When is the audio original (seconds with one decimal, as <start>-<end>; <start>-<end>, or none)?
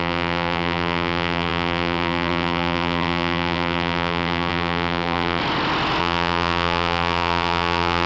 5.4-6.0